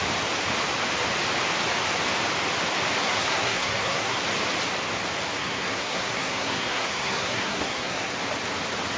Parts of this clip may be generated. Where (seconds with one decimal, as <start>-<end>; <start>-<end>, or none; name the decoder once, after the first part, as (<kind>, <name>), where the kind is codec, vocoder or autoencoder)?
3.0-4.2 (codec, SNAC); 5.4-8.1